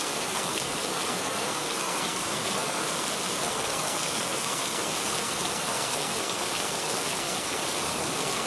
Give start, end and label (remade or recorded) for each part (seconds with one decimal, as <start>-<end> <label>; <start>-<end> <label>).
0.0-8.5 remade